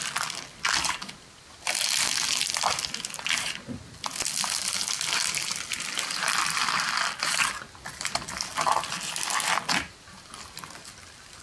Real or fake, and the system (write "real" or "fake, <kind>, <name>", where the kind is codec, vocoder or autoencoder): real